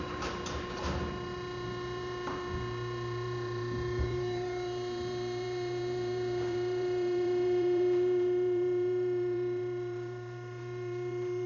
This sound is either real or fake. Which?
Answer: fake